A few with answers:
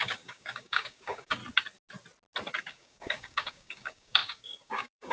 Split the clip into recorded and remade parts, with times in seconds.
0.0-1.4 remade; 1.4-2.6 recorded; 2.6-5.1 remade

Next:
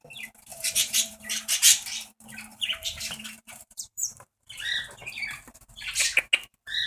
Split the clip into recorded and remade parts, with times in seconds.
0.0-0.5 recorded; 0.5-2.1 remade; 2.1-2.5 recorded; 2.5-4.8 remade; 4.8-6.9 recorded

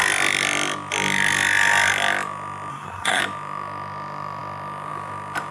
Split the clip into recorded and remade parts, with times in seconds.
0.0-2.7 recorded; 2.7-3.2 remade; 3.2-5.5 recorded

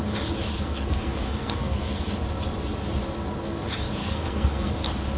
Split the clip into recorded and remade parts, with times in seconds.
0.0-0.5 recorded; 0.5-2.0 remade; 2.0-4.0 recorded; 4.0-4.7 remade; 4.7-5.2 recorded

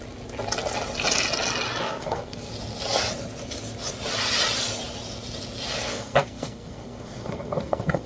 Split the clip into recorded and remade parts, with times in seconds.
0.0-1.8 recorded; 1.8-2.5 remade; 2.5-5.8 recorded; 5.8-8.1 remade

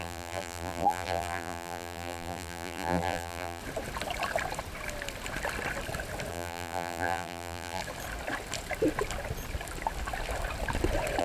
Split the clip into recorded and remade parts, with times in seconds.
0.0-3.6 remade; 3.6-6.3 recorded; 6.3-7.8 remade; 7.8-11.2 recorded